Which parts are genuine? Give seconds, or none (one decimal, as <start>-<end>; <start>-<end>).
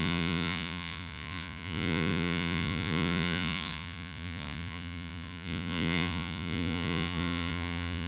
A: none